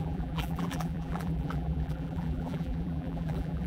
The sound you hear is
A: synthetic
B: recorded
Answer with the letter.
A